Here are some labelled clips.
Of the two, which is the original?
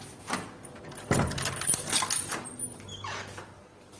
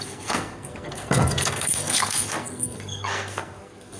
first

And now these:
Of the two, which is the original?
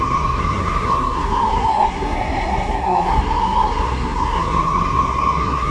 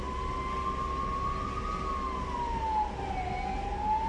second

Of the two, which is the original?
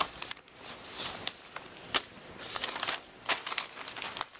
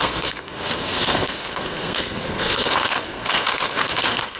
first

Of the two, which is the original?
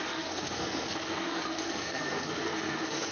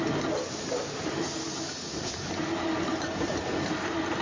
second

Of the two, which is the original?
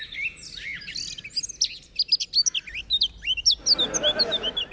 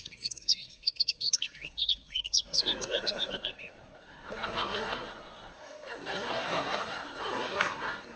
first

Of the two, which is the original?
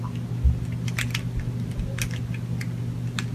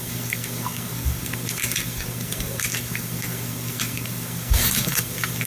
first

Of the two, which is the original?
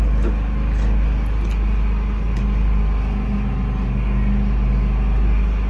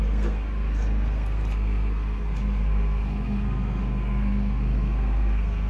first